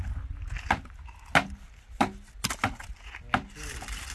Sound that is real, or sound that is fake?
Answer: real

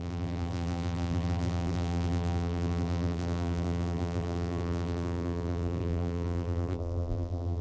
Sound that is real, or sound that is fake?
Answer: fake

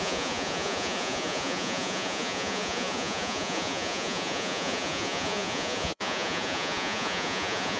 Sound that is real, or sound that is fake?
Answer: fake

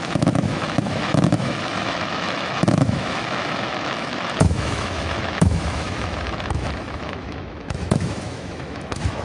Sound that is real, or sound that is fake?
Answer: fake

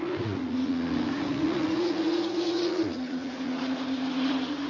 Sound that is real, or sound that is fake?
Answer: fake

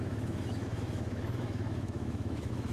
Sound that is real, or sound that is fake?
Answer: fake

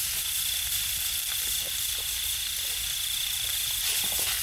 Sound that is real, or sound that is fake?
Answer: real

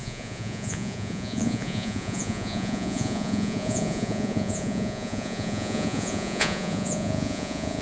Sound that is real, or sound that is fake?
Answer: fake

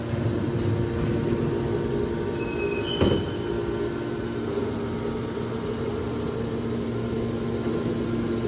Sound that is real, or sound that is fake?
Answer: real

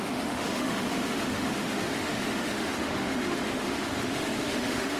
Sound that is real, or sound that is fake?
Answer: fake